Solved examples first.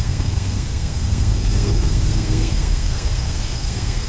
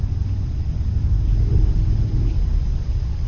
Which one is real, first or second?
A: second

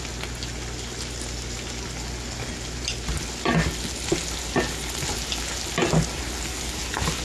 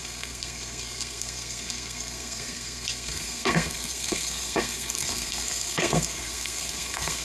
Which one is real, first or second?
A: first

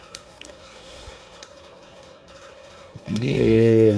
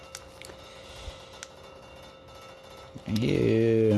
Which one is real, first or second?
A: second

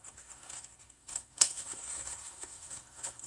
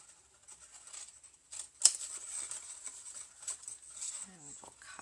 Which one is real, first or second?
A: second